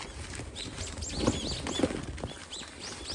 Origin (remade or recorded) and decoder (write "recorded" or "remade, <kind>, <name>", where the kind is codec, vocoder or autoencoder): recorded